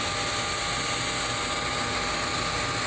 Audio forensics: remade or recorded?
recorded